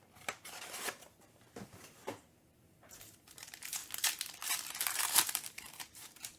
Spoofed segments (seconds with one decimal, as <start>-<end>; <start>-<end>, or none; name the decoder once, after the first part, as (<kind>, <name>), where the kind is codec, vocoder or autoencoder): 0.0-3.8 (vocoder, BigVGAN v2); 4.8-6.4